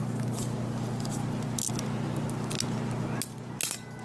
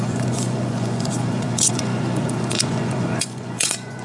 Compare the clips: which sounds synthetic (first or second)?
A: second